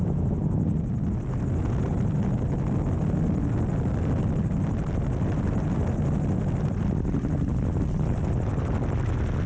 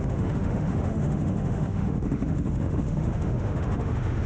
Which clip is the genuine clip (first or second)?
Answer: first